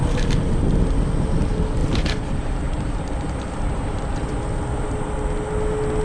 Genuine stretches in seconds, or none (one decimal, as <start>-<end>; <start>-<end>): 0.0-1.8; 4.1-6.0